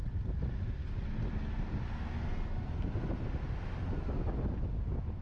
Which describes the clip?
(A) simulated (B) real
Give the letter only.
B